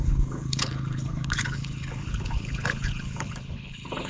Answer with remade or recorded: remade